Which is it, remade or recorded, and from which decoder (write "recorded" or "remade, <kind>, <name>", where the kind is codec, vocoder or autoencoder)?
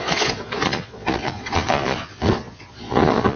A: remade, vocoder, Vocos